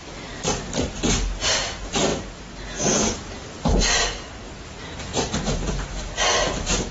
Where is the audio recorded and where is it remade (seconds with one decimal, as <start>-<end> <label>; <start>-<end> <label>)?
0.0-2.1 recorded; 2.1-4.5 remade; 4.5-5.1 recorded; 5.1-6.9 remade

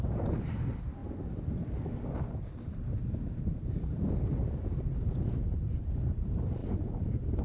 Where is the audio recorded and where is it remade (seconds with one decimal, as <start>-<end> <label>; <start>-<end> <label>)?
0.0-1.0 remade; 1.0-4.9 recorded; 4.9-7.4 remade

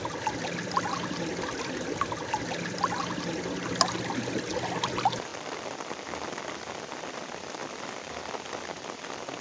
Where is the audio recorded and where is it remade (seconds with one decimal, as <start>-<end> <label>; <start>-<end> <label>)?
0.0-5.3 recorded; 5.3-6.0 remade; 6.0-7.6 recorded; 7.6-8.3 remade; 8.3-9.4 recorded

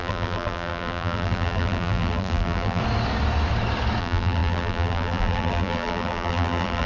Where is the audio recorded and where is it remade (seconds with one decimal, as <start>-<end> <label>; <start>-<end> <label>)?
0.0-2.8 remade; 2.8-4.0 recorded; 4.0-6.9 remade

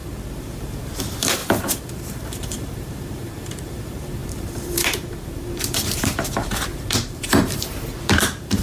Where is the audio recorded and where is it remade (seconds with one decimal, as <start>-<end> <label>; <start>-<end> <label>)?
0.0-8.6 remade